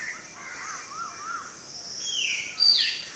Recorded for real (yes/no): yes